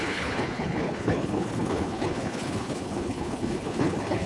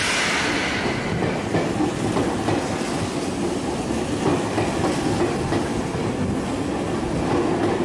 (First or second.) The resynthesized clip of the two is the first